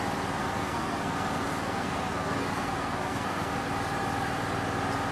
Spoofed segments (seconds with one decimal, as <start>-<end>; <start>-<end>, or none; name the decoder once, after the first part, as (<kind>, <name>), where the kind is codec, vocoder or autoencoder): 0.4-3.5 (codec, SNAC)